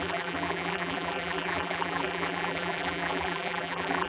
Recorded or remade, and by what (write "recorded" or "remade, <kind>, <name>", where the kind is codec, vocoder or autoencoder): remade, vocoder, BigVGAN v2